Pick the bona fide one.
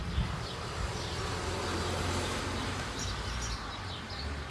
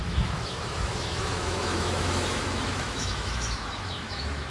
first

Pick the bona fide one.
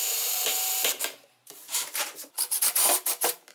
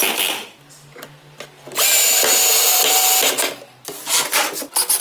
second